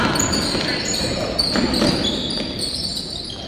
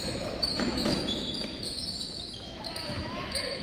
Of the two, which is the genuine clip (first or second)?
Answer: first